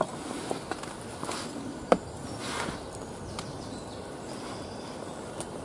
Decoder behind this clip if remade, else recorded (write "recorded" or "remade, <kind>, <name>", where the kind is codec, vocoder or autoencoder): recorded